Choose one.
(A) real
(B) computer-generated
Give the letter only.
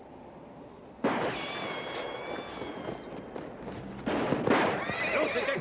A